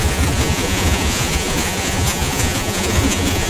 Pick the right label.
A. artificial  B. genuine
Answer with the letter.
A